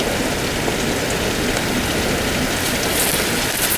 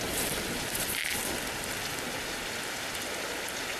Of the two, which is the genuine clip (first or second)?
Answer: first